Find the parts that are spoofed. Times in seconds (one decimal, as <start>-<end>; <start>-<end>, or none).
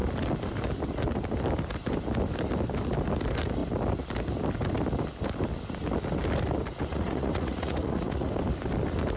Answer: 6.9-8.3